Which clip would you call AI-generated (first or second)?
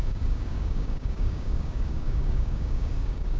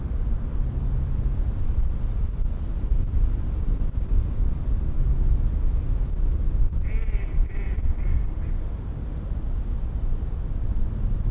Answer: first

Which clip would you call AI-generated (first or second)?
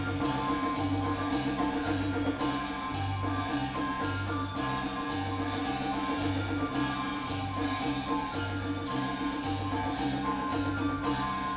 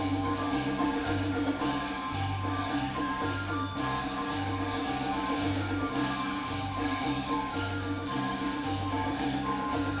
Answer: second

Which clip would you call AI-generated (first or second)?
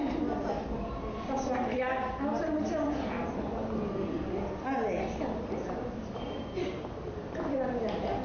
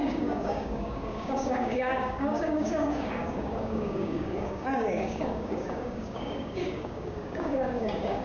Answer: second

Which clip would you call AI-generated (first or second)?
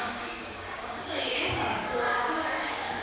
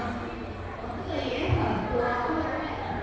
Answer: first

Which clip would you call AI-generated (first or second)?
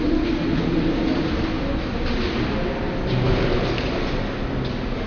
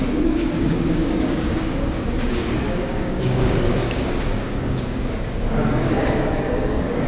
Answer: second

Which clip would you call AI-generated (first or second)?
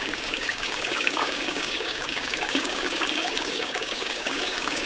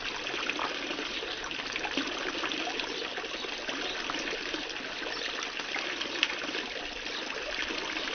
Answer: first